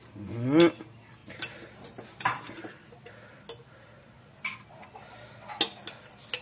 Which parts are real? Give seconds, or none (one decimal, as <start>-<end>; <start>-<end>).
0.0-1.2; 2.4-6.4